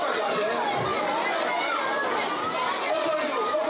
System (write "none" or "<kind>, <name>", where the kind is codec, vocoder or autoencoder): none